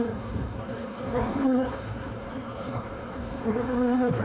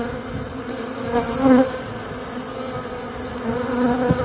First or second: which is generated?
first